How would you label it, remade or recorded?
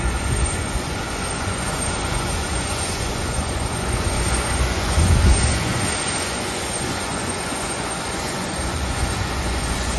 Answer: remade